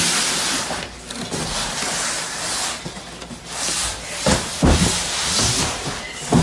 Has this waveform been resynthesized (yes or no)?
no